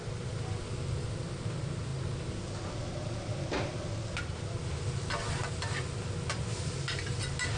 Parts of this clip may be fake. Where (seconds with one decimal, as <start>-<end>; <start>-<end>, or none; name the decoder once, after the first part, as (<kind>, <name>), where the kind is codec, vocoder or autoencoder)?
none